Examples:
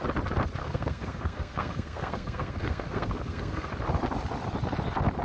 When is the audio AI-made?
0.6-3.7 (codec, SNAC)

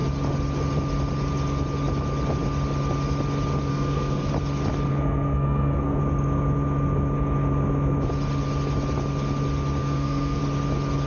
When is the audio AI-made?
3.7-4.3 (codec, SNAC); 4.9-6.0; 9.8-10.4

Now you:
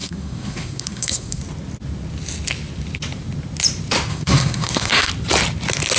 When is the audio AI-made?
0.0-1.4 (codec, SNAC); 4.1-5.1